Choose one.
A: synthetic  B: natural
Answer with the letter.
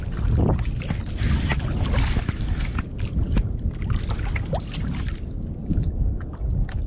B